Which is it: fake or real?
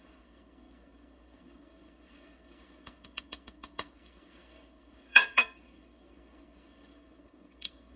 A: fake